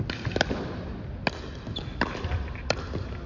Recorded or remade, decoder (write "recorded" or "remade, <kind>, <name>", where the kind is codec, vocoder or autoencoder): recorded